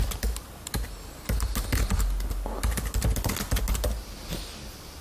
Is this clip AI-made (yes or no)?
no